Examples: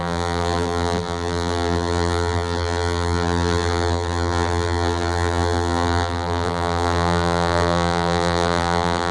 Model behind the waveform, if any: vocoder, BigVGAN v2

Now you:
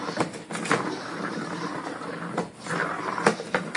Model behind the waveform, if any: vocoder, BigVGAN v2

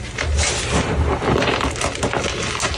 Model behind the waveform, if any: none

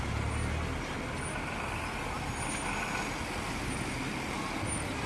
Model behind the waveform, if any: none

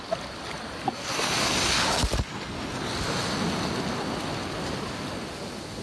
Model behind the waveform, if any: none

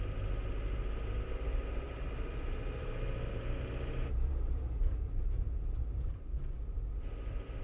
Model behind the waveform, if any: vocoder, BigVGAN v2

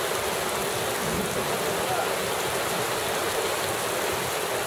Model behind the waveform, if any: none